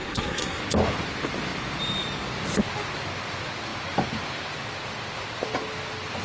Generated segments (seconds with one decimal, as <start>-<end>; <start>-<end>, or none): 0.0-0.6